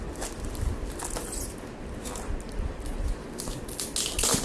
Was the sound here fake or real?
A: real